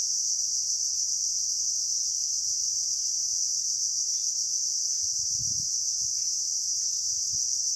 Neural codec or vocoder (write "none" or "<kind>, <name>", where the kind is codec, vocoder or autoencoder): none